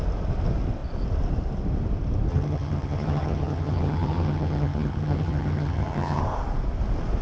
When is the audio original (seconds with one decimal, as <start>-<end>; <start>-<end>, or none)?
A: 0.0-2.3; 6.2-7.2